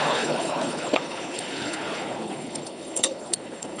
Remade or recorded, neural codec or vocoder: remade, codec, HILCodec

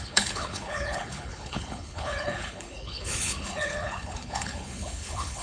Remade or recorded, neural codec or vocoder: remade, codec, HILCodec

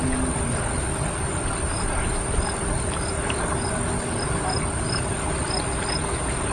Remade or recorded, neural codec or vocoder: recorded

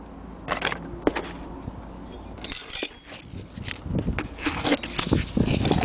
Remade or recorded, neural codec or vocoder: recorded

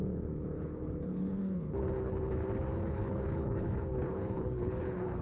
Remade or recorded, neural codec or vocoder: remade, codec, HILCodec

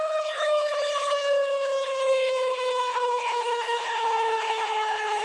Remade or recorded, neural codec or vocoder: remade, codec, HILCodec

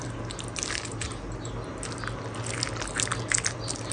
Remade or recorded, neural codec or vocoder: recorded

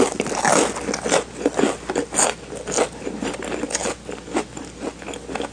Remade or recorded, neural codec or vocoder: recorded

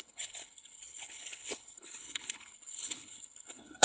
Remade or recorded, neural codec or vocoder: remade, codec, HILCodec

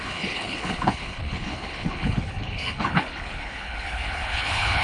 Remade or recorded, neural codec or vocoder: remade, codec, HILCodec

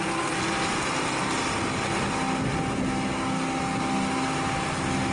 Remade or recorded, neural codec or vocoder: recorded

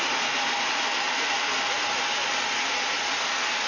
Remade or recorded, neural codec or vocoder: recorded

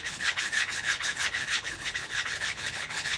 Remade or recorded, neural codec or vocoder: remade, codec, HILCodec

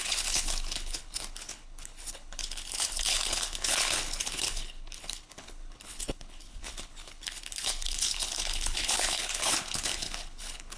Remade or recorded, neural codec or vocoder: remade, codec, HILCodec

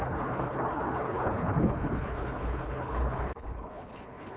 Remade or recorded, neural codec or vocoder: remade, codec, HILCodec